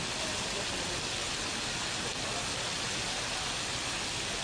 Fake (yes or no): no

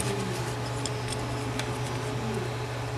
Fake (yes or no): no